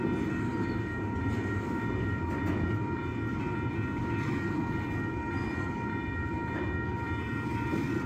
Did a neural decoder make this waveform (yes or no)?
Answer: no